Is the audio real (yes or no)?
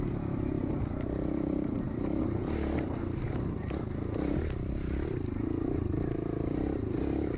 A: yes